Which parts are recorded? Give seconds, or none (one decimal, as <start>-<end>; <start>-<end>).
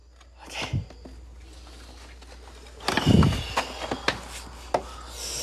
0.0-5.4